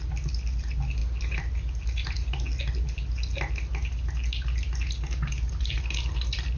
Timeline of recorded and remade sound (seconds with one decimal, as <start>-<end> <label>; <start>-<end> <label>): 0.0-6.6 recorded